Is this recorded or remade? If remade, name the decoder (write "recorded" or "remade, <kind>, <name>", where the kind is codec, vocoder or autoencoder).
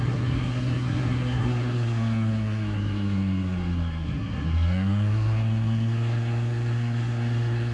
remade, codec, SNAC